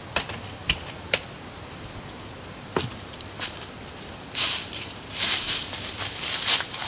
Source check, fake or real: fake